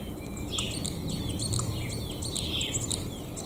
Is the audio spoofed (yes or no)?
no